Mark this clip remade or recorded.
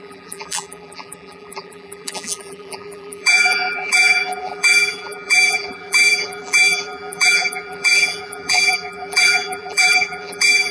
remade